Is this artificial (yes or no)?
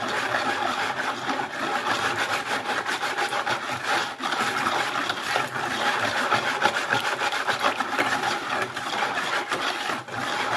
no